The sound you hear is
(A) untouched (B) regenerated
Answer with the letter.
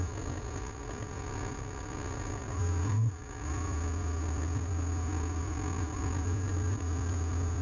A